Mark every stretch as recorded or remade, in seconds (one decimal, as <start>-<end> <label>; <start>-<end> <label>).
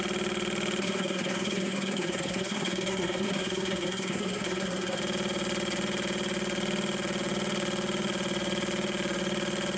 0.0-0.8 recorded; 0.8-5.0 remade; 5.0-9.8 recorded